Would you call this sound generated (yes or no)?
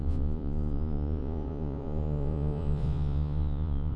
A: yes